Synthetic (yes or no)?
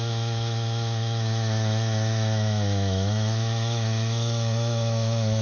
yes